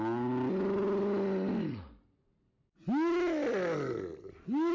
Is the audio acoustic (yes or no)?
yes